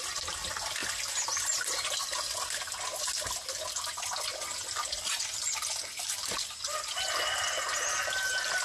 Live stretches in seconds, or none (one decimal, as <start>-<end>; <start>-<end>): 0.0-0.8; 2.0-4.5; 5.2-8.6